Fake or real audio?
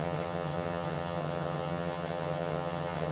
fake